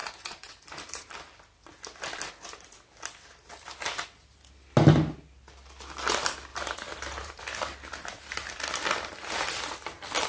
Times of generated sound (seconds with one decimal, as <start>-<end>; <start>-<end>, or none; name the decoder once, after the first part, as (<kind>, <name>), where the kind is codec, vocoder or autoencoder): 0.0-1.0 (vocoder, BigVGAN v2); 6.5-7.4